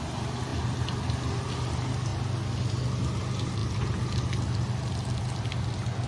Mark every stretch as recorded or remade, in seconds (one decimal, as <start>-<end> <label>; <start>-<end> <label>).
0.0-6.1 recorded